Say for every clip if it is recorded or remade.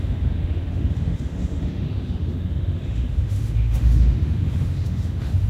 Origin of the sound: remade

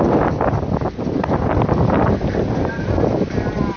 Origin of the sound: recorded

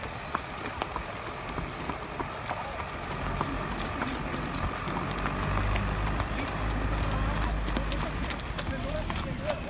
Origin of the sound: recorded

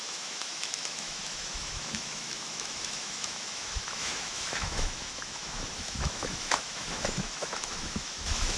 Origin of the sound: remade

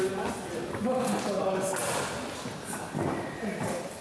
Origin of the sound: recorded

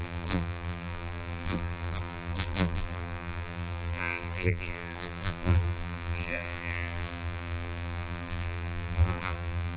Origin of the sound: remade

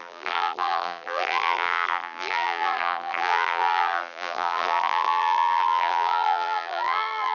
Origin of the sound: remade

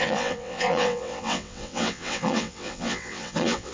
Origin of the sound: remade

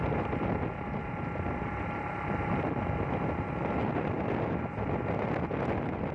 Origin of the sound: recorded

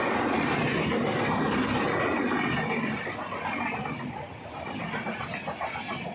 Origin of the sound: recorded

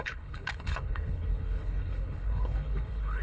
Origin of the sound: remade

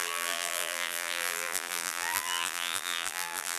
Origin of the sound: remade